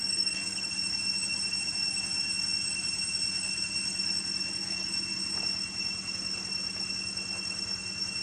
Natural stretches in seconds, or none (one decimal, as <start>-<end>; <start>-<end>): 0.7-8.2